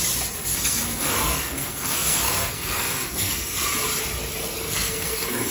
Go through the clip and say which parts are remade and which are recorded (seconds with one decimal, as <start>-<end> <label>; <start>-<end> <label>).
0.0-0.5 recorded; 0.5-3.7 remade; 3.7-4.4 recorded; 4.4-5.5 remade